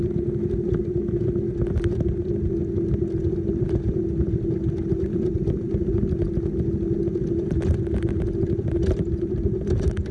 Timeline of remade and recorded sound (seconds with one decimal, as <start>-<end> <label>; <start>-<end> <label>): 0.0-10.1 recorded